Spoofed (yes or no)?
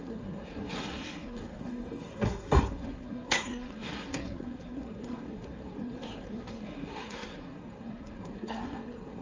yes